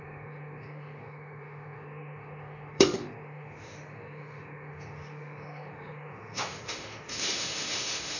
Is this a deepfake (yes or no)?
yes